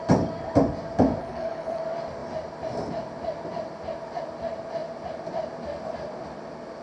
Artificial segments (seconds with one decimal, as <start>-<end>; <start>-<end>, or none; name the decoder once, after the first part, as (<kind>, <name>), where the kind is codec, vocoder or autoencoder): 1.2-1.8 (codec, HILCodec)